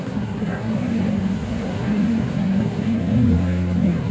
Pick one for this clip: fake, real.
fake